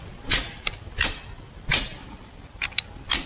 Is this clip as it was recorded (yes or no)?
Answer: yes